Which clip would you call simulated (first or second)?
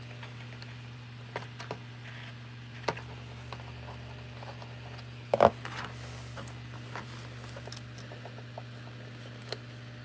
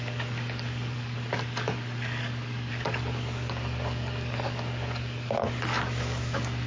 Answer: second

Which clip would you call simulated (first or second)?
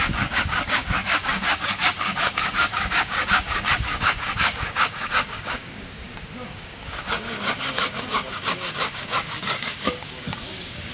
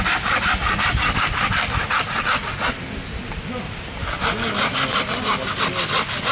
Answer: first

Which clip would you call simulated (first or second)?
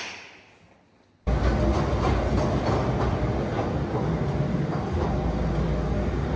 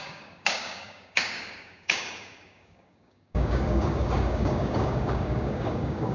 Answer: second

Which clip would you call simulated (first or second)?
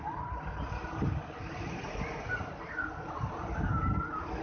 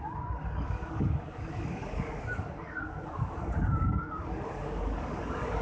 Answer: second